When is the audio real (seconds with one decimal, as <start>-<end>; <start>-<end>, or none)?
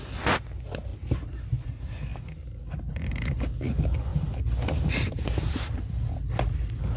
0.0-7.0